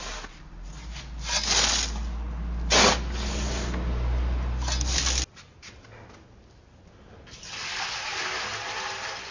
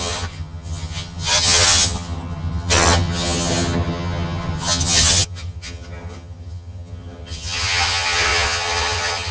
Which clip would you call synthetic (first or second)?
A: second